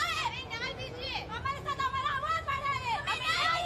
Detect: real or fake fake